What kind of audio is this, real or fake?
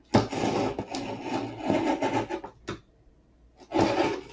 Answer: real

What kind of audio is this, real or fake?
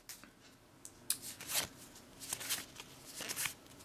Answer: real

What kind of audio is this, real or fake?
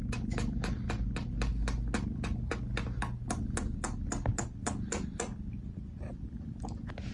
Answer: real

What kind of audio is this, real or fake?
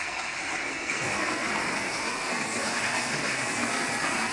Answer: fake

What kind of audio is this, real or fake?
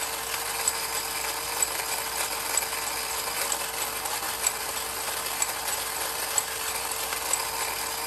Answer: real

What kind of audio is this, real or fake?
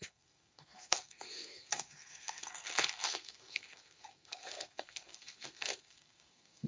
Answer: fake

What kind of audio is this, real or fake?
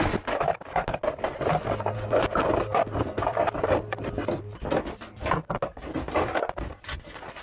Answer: real